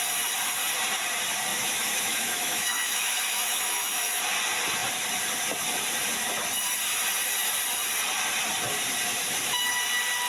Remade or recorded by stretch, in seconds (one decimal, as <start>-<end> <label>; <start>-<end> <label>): 0.0-1.5 recorded; 1.5-4.2 remade; 4.2-10.3 recorded